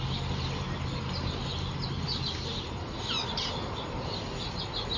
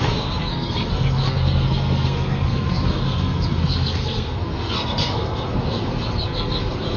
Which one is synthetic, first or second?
second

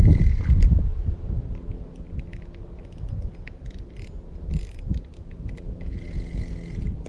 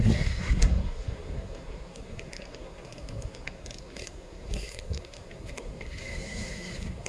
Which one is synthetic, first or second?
second